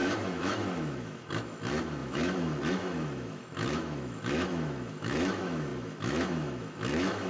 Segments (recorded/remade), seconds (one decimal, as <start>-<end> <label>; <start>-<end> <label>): 0.0-7.3 remade